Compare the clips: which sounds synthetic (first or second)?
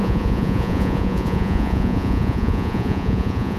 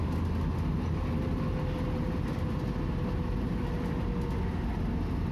first